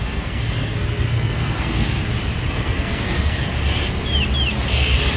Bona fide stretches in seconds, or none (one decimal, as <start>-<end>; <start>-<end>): 2.0-2.5; 3.5-4.7